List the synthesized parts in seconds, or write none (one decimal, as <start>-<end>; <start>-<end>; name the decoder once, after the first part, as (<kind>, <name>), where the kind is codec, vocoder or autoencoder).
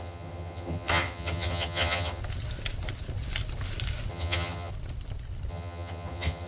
0.0-2.2 (vocoder, HiFi-GAN); 4.1-4.7; 5.5-6.5